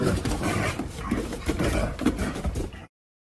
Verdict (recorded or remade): remade